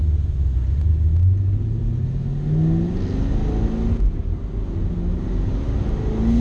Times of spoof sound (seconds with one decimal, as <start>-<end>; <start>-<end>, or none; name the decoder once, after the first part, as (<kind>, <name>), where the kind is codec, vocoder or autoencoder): none